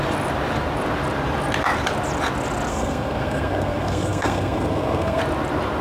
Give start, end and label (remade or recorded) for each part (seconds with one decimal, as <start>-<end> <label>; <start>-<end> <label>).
0.0-2.7 recorded; 2.7-5.2 remade; 5.2-5.8 recorded